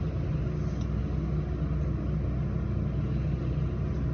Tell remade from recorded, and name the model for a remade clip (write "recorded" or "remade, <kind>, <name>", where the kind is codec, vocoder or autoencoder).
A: recorded